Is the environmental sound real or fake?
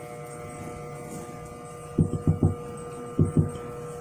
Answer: real